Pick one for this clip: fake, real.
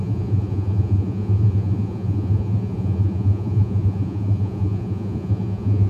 fake